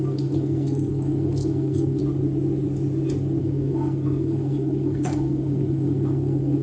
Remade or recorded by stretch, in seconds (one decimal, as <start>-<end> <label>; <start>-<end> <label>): 0.0-2.0 remade; 2.0-3.4 recorded; 3.4-6.6 remade